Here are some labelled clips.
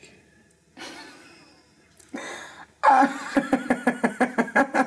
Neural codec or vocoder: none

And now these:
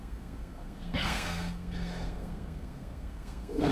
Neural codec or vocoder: codec, SNAC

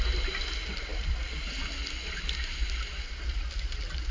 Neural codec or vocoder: none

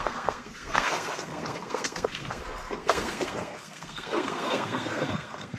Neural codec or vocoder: codec, SNAC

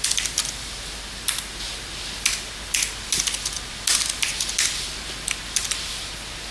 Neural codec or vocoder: none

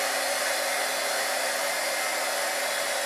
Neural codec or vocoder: none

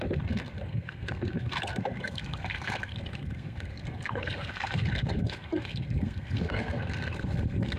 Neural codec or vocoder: codec, SNAC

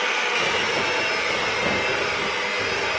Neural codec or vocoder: none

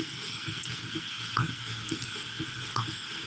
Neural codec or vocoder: codec, SNAC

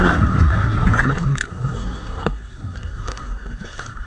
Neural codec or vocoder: codec, SNAC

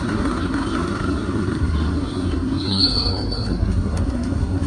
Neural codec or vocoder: codec, SNAC